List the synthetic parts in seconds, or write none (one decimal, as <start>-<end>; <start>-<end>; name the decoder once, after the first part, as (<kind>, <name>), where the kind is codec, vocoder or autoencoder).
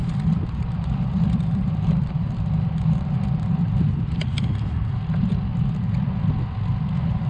0.0-4.4 (vocoder, BigVGAN v2); 5.5-6.1